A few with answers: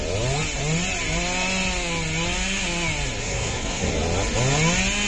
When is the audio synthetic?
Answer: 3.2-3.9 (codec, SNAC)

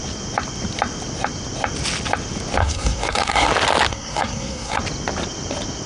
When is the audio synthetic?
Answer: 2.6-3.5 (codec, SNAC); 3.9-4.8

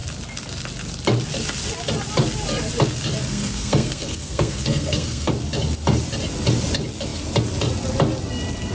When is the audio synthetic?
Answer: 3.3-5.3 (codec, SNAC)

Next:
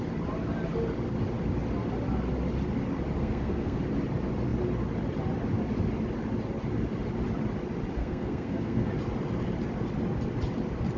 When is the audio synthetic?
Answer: 3.2-3.8 (codec, SNAC); 8.0-8.9

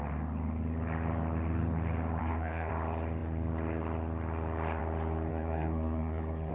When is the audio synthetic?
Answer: 2.2-2.7 (codec, SNAC); 5.3-6.5

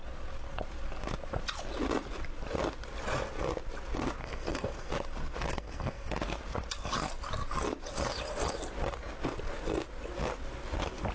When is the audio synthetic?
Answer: 4.2-4.9 (codec, SNAC); 5.5-6.1

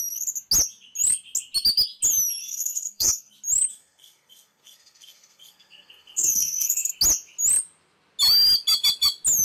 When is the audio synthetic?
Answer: 2.4-3.3 (codec, SNAC); 3.7-6.9